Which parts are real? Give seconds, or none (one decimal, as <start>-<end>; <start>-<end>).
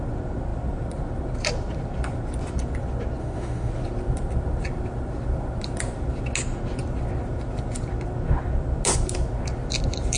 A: 0.0-3.2; 3.7-10.2